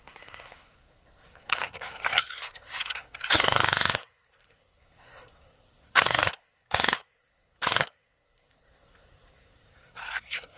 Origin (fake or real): fake